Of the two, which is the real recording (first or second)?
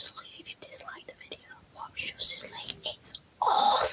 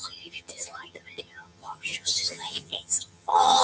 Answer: first